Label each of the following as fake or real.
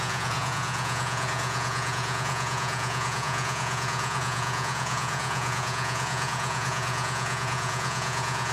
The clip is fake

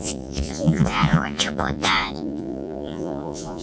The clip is fake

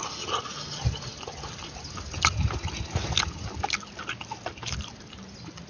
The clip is real